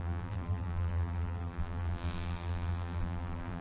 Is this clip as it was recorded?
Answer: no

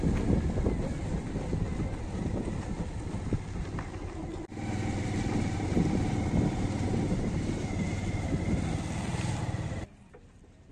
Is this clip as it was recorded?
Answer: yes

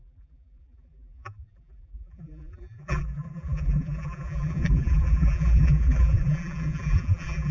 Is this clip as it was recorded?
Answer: no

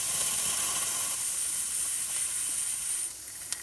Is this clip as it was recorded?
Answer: yes